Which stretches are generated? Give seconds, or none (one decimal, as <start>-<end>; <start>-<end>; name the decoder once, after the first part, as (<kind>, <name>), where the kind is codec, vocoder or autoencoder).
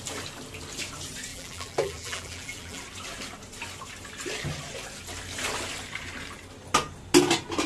1.3-2.8 (vocoder, BigVGAN v2)